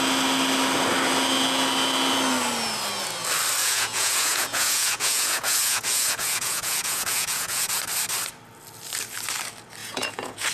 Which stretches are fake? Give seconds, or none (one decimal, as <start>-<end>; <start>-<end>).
3.6-7.8; 9.8-10.5